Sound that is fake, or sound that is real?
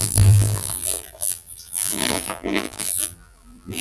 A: fake